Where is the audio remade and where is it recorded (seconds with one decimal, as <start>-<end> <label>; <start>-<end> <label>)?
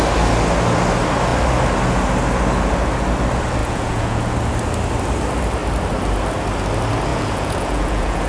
0.0-3.6 recorded; 3.6-4.2 remade; 4.2-7.1 recorded; 7.1-8.3 remade